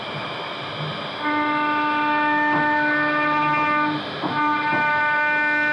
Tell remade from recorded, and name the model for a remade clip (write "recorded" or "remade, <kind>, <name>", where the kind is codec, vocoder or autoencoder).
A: recorded